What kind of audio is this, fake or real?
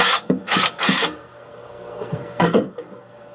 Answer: fake